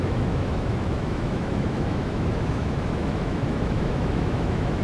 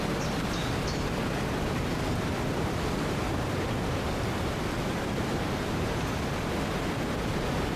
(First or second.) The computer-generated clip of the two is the first